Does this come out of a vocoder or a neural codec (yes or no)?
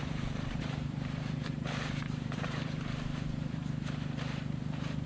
yes